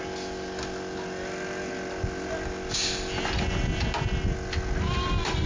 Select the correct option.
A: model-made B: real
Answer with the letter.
B